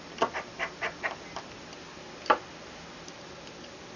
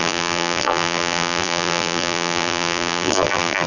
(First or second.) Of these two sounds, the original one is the first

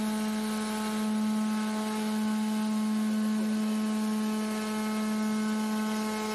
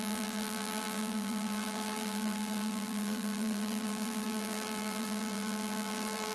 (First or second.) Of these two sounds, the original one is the first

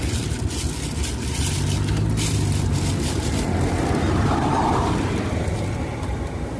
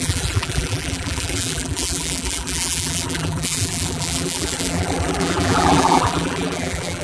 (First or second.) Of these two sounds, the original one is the first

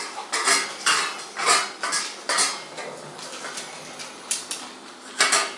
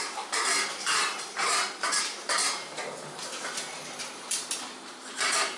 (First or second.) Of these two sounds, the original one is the first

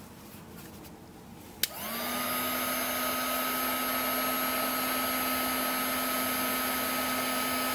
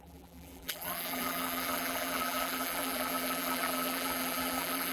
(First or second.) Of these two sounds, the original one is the first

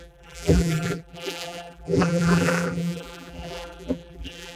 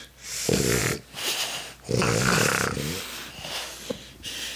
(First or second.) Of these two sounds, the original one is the second